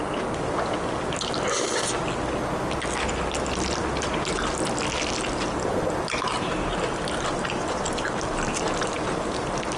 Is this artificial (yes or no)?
no